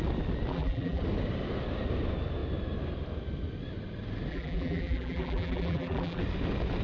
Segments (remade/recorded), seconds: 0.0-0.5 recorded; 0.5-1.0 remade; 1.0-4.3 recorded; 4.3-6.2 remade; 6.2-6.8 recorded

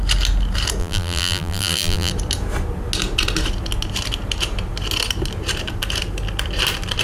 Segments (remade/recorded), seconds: 0.0-0.8 recorded; 0.8-2.1 remade; 2.1-7.0 recorded